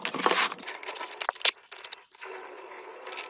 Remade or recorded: recorded